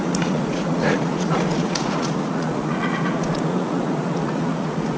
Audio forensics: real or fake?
fake